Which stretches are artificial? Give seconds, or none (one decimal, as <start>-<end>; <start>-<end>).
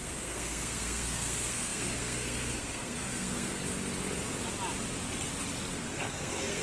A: 0.0-3.6; 5.7-6.6